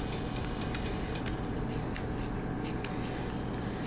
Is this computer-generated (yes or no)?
no